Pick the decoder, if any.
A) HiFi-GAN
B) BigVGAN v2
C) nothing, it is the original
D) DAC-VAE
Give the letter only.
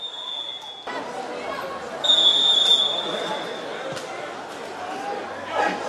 C